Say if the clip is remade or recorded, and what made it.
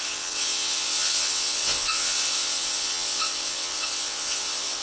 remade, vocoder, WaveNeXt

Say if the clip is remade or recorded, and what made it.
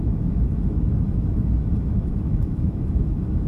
remade, autoencoder, DAC-VAE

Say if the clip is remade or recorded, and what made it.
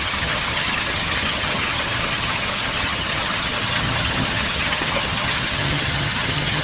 remade, vocoder, HiFi-GAN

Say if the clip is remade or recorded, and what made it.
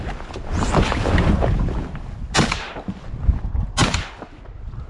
recorded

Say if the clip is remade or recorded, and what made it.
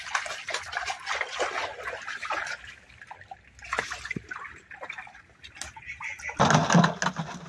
recorded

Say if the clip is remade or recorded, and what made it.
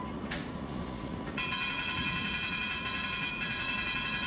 remade, vocoder, Vocos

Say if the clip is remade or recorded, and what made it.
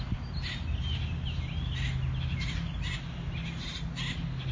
recorded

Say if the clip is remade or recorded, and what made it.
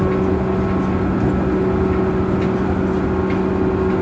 recorded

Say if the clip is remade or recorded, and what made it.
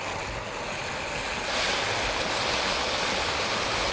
recorded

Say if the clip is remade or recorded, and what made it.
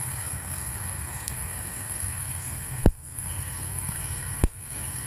remade, codec, SNAC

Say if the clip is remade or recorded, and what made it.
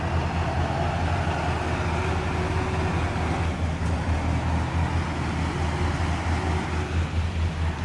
recorded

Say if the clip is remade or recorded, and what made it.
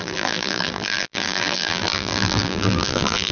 remade, vocoder, BigVGAN v2